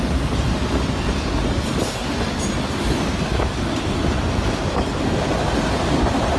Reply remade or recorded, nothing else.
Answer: recorded